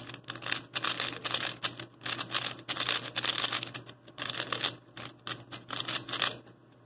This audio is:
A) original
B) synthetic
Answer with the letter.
A